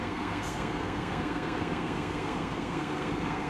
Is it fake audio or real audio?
fake